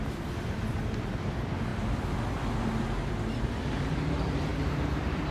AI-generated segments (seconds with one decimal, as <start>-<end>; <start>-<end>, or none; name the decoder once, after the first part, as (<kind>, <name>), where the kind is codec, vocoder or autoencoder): 4.5-5.3 (vocoder, BigVGAN v2)